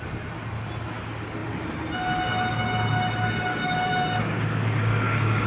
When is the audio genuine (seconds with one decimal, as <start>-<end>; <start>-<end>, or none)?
0.0-3.5